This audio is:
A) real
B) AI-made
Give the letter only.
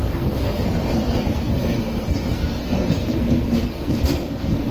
B